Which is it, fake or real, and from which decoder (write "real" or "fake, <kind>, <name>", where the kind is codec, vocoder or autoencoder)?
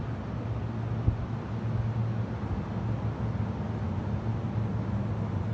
real